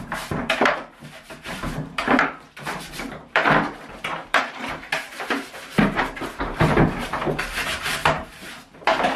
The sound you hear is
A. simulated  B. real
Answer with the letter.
A